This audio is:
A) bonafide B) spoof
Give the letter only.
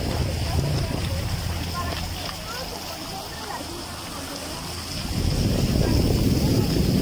A